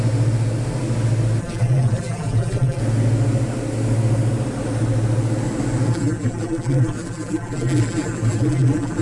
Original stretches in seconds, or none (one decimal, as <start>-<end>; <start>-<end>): 0.0-1.4; 2.8-5.9